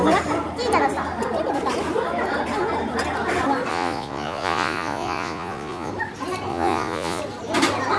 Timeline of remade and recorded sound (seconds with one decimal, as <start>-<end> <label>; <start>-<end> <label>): 0.0-3.7 recorded; 3.7-5.9 remade; 5.9-6.5 recorded; 6.5-7.2 remade; 7.2-8.0 recorded